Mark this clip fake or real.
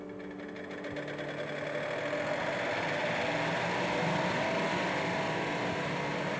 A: real